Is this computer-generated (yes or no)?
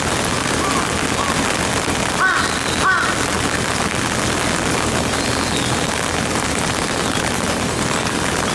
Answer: no